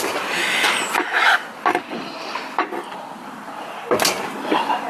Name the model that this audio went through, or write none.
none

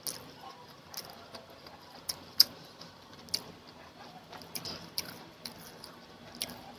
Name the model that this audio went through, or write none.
none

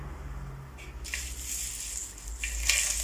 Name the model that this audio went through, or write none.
none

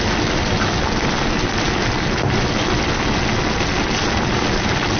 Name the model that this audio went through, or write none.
none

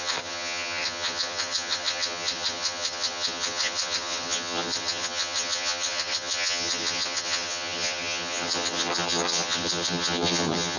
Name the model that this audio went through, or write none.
vocoder, HiFi-GAN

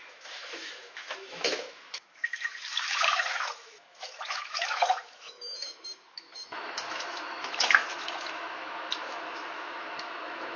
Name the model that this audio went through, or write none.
autoencoder, DAC-VAE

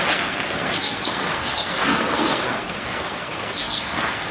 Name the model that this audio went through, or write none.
codec, SNAC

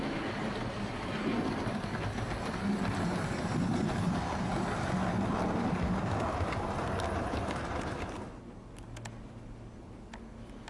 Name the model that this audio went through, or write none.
none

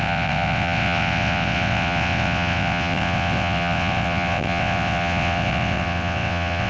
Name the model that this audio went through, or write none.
vocoder, WaveNeXt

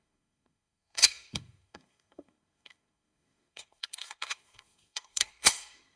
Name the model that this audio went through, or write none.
codec, SNAC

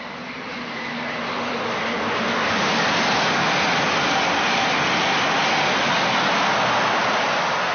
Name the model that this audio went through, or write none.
none